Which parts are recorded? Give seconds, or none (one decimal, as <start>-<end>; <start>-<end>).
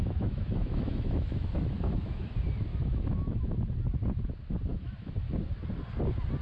2.3-2.7; 3.6-4.7; 5.2-6.4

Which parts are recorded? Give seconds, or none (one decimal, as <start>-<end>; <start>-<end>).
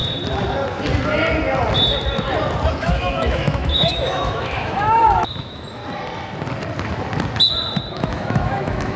0.0-2.8; 5.8-7.9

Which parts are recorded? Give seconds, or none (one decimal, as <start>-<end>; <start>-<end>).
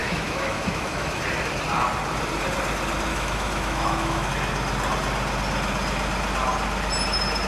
1.2-3.1; 4.3-7.5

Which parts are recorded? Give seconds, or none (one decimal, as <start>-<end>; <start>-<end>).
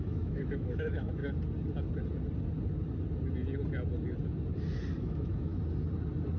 1.2-5.0; 5.5-6.4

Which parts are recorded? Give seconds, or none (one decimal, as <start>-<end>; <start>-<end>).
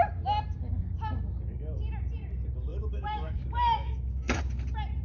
0.0-2.7; 4.4-5.0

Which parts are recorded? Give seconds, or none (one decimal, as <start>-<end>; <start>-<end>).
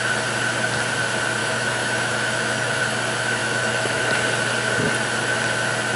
0.0-1.4; 2.8-3.4; 4.0-6.0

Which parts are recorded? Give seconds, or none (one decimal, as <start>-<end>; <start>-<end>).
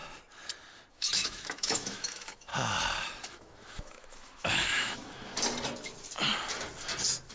0.0-0.9; 2.5-3.2; 5.3-7.3